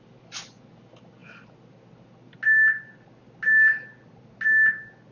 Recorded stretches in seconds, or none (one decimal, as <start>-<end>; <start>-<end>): 0.0-5.1